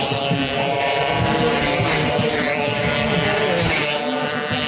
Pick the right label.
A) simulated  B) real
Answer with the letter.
B